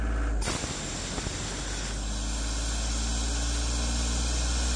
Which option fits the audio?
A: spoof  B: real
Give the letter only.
B